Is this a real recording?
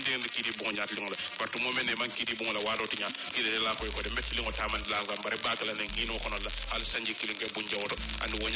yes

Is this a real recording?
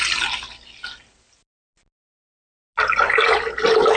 yes